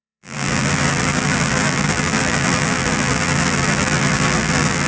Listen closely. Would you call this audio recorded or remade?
remade